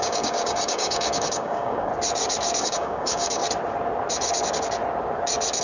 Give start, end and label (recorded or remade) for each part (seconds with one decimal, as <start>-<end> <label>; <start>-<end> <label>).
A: 0.0-1.9 remade; 1.9-2.6 recorded; 2.6-3.4 remade; 3.4-5.6 recorded